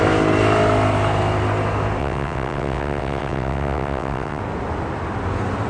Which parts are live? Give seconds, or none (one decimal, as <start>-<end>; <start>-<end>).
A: 0.0-2.0; 4.4-5.7